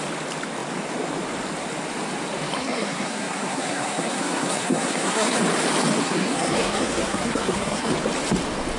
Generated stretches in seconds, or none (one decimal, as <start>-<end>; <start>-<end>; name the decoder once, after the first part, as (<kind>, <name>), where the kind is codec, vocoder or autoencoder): 2.6-5.4 (codec, SNAC); 6.0-7.9